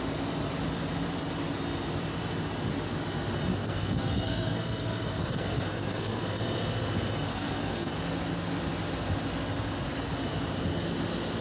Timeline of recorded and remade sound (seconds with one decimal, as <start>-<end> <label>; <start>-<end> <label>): 0.0-3.5 recorded; 3.5-6.4 remade; 6.4-7.3 recorded; 7.3-7.9 remade; 7.9-11.4 recorded

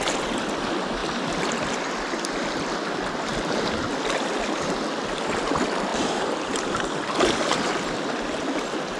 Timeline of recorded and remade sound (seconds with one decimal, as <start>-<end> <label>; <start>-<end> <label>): 0.0-1.0 recorded; 1.0-1.5 remade; 1.5-5.9 recorded; 5.9-6.4 remade; 6.4-9.0 recorded

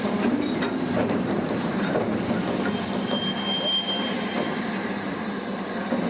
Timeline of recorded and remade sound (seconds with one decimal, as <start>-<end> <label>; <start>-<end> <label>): 0.0-2.1 remade; 2.1-4.6 recorded; 4.6-6.1 remade

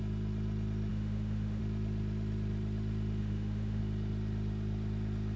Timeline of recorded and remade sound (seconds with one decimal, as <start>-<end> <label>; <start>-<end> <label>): 0.0-0.9 recorded; 0.9-1.6 remade; 1.6-3.2 recorded; 3.2-3.8 remade; 3.8-5.4 recorded